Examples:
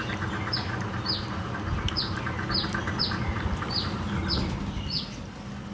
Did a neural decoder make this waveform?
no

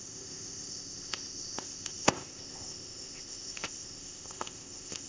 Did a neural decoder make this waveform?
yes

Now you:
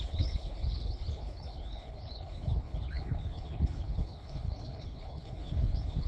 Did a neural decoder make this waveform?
yes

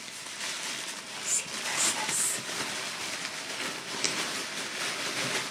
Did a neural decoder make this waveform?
no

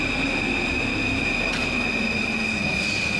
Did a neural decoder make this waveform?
no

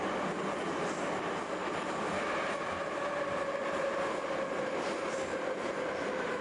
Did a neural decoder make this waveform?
no